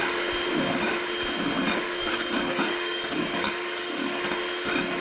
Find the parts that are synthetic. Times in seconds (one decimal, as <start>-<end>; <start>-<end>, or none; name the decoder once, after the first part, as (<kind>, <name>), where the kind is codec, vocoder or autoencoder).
2.0-4.2 (codec, DAC)